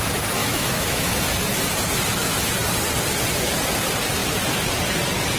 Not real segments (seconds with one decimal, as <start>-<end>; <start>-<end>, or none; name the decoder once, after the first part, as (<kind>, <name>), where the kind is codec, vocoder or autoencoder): 0.4-1.1 (autoencoder, DAC-VAE)